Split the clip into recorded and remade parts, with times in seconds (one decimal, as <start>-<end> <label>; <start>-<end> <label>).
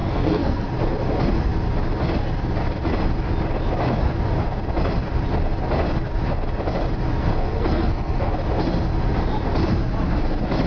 0.0-0.7 remade; 0.7-7.2 recorded; 7.2-8.3 remade; 8.3-10.7 recorded